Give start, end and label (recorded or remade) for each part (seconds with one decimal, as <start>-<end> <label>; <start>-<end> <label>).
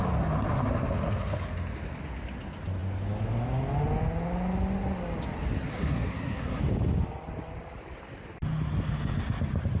0.0-5.7 recorded; 5.7-6.6 remade; 6.6-9.8 recorded